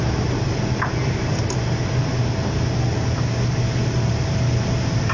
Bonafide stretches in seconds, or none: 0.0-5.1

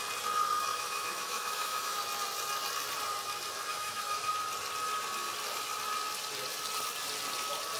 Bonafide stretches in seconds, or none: 0.0-0.7; 2.0-3.7; 4.3-7.8

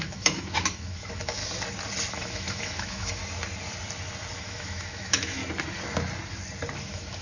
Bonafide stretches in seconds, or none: 1.4-2.1; 3.2-4.4; 5.4-6.8

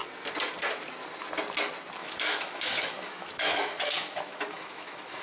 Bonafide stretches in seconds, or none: 0.0-2.0